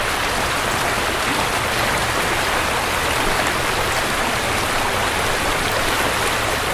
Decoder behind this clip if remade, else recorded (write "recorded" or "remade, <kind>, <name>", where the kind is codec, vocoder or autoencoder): recorded